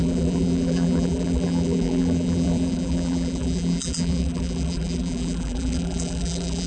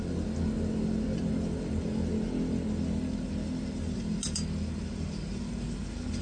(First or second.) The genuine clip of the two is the second